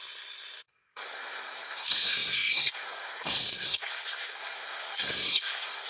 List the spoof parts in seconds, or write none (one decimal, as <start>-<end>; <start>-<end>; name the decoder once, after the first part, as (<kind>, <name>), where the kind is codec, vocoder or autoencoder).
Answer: 0.0-5.9 (codec, SNAC)